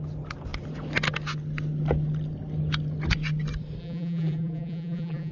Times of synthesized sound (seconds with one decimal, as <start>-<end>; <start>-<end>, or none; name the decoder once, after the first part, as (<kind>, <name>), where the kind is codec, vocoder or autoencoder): 3.8-5.3 (vocoder, BigVGAN v2)